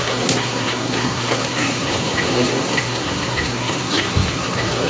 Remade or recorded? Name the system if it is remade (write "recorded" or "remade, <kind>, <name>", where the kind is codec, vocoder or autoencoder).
remade, codec, SNAC